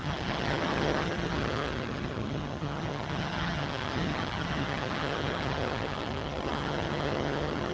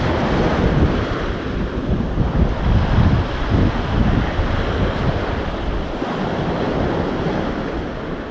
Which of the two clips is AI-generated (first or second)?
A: first